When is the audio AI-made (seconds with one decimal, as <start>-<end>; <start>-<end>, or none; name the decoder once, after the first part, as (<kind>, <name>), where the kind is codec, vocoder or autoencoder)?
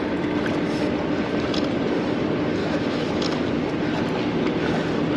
2.6-3.1 (autoencoder, DAC-VAE)